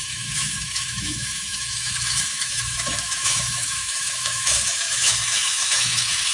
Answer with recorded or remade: remade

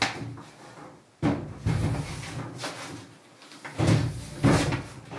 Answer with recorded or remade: recorded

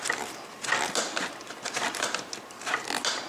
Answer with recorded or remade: recorded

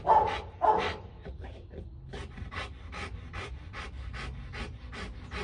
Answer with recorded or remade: recorded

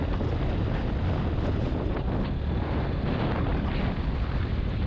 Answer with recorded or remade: recorded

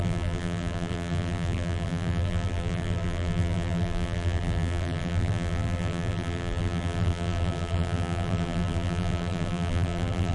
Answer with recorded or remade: remade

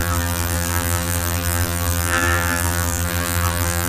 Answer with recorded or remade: remade